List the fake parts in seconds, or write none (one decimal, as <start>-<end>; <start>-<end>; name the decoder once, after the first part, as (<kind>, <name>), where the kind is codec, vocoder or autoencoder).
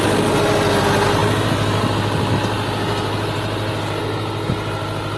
none